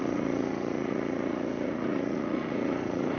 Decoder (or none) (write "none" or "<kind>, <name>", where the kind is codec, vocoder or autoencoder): vocoder, Vocos